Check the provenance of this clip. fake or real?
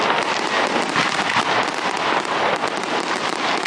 real